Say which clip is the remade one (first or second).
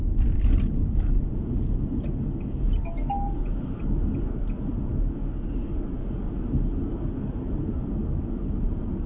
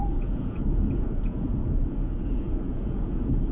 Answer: second